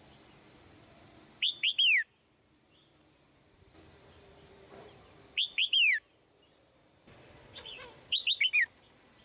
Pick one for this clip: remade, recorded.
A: remade